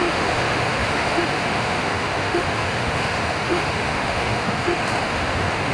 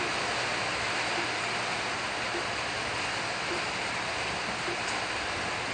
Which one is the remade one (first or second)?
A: first